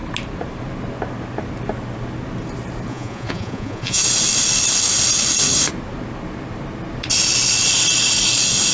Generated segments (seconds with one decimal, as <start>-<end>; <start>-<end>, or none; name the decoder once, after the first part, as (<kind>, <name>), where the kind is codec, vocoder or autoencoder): 2.9-4.0 (vocoder, Vocos)